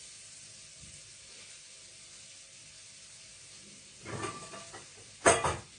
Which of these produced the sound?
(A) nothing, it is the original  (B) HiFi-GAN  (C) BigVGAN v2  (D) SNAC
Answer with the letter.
A